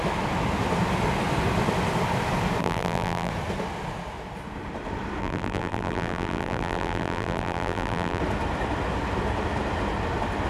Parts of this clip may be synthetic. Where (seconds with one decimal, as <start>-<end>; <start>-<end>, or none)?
2.6-3.3; 5.2-8.2